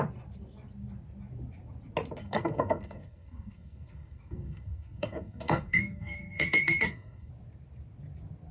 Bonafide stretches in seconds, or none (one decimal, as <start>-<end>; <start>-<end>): 0.0-2.2; 7.3-8.5